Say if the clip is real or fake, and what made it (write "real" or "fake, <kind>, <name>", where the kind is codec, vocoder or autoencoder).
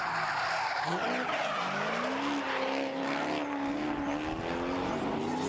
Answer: real